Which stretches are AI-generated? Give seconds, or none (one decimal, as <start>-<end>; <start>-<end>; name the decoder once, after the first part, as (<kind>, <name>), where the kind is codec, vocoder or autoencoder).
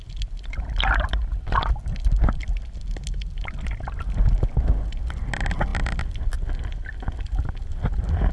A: none